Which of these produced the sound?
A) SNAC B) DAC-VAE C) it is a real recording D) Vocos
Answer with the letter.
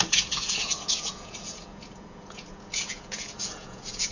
D